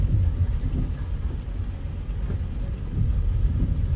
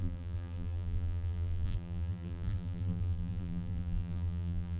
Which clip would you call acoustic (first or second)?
first